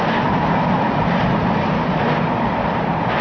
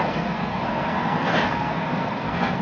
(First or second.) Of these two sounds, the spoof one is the second